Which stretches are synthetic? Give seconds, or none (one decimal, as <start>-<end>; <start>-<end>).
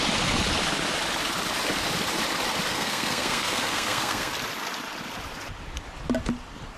2.7-4.3